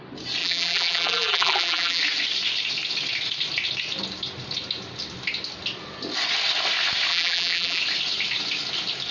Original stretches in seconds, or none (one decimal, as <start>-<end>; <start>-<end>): 0.0-0.4; 2.0-7.1; 7.8-9.1